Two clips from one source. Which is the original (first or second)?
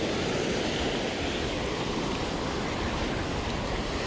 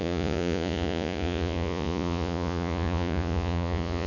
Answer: first